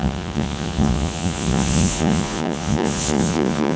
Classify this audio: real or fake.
fake